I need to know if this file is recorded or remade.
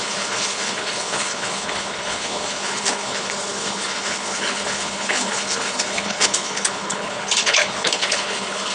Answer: remade